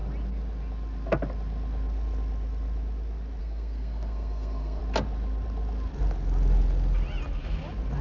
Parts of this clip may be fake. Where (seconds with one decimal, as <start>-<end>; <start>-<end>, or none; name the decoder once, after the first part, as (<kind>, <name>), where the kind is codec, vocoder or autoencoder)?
3.4-4.8 (codec, SNAC)